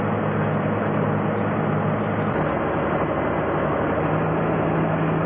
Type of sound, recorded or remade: recorded